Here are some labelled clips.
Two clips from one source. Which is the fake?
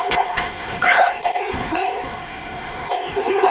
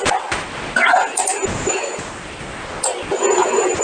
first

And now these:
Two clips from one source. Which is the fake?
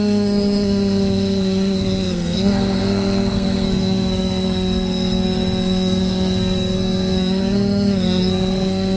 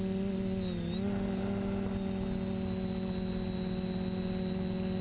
first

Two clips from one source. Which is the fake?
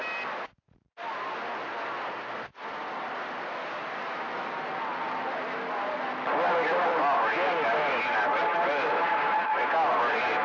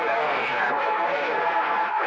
second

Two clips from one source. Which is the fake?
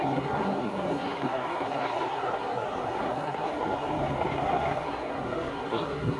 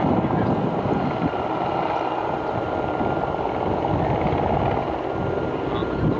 first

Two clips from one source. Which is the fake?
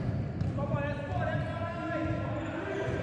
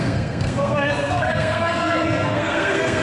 second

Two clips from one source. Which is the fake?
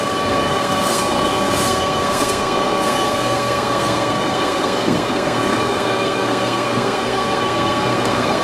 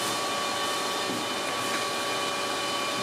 first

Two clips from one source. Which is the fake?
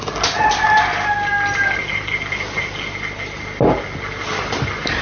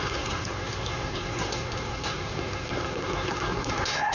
second